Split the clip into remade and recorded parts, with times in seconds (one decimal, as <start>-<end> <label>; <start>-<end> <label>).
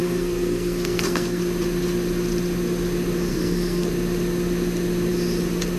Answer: 0.0-1.4 remade; 1.4-3.3 recorded; 3.3-3.9 remade; 3.9-5.8 recorded